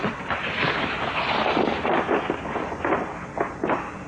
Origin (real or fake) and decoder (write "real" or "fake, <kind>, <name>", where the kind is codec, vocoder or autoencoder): fake, vocoder, BigVGAN v2